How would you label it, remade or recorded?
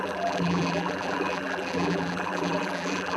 remade